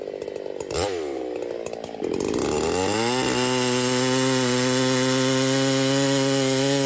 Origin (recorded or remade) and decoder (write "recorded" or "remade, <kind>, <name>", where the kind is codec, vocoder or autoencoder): recorded